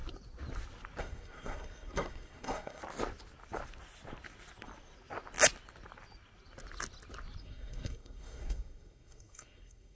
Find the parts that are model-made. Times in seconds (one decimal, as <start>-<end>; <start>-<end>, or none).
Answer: 1.0-2.8; 7.4-9.9